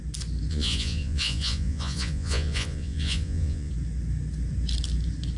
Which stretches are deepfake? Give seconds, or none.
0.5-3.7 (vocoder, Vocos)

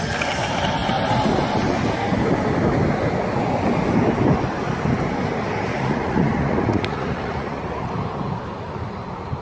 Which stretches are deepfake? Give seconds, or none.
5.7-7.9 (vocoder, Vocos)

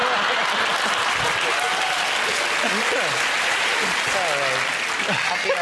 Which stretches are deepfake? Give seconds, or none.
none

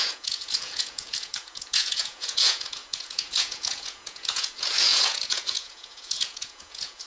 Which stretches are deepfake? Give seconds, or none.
0.0-7.1 (vocoder, Vocos)

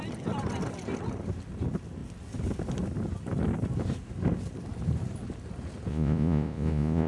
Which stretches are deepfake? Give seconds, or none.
5.9-7.1 (vocoder, Vocos)

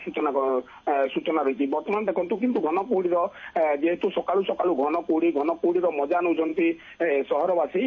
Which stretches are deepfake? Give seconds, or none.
0.0-2.6 (vocoder, Vocos)

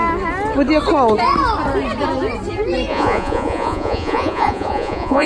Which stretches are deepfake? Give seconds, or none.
2.9-5.3 (vocoder, Vocos)

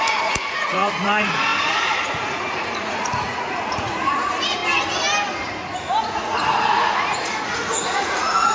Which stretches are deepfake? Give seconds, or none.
0.0-4.6 (vocoder, Vocos); 6.0-8.5